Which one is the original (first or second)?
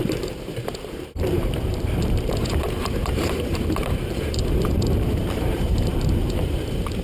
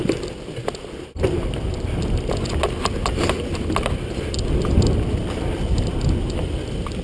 second